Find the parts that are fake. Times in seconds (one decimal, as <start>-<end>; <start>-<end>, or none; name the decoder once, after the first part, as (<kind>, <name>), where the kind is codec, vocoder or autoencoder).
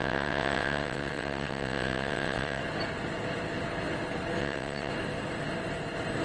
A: 0.0-2.6 (vocoder, WaveNeXt); 4.4-4.9